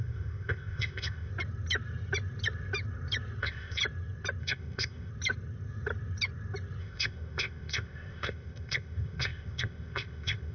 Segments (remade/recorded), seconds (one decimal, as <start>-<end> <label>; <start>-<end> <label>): 0.0-1.3 remade; 1.3-3.4 recorded; 3.4-3.8 remade; 3.8-4.4 recorded; 4.4-5.1 remade; 5.1-6.8 recorded; 6.8-10.5 remade